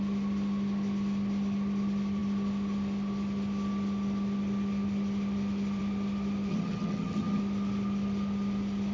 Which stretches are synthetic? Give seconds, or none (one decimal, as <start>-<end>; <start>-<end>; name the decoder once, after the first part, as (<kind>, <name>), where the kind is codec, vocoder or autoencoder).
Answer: 6.5-7.4 (vocoder, HiFi-GAN)